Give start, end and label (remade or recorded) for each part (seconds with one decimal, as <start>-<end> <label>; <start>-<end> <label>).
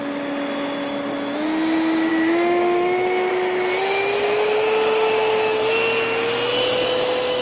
0.0-2.1 recorded; 2.1-3.3 remade; 3.3-7.4 recorded